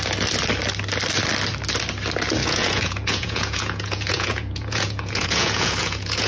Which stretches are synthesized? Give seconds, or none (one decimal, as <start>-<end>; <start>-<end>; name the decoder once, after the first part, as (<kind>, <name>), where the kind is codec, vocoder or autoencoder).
2.4-6.3 (vocoder, Vocos)